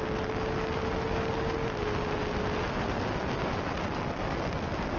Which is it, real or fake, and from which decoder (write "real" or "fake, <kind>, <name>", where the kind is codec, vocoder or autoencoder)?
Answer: real